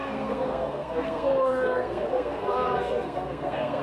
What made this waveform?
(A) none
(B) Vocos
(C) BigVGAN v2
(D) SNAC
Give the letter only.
D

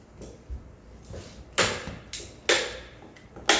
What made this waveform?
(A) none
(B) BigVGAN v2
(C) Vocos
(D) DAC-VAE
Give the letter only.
A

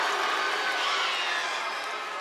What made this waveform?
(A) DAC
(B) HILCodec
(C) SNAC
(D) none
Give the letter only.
D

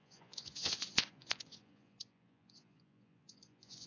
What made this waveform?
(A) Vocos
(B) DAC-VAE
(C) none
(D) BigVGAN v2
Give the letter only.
A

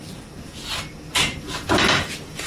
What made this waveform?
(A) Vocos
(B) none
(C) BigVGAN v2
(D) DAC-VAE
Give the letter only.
B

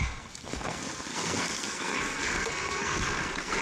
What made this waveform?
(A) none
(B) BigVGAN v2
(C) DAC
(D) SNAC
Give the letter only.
D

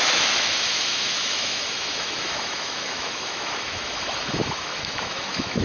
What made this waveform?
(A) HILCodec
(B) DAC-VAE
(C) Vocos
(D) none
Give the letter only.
B